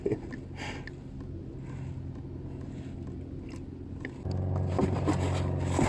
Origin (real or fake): real